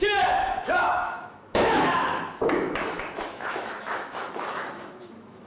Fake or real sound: fake